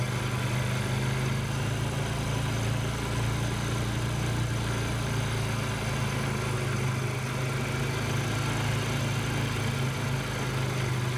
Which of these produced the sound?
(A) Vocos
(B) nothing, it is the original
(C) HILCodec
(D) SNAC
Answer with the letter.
B